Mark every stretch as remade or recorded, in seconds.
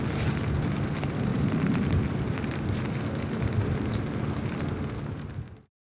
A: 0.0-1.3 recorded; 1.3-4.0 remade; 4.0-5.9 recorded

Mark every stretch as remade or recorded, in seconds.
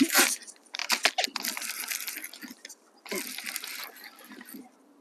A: 0.0-0.8 remade; 0.8-3.8 recorded; 3.8-5.0 remade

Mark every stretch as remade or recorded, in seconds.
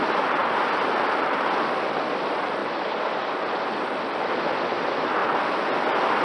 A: 0.0-0.4 remade; 0.4-1.2 recorded; 1.2-5.2 remade; 5.2-6.2 recorded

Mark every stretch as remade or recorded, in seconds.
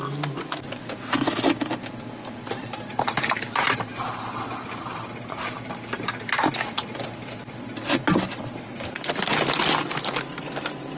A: 0.0-4.6 recorded; 4.6-6.5 remade; 6.5-11.0 recorded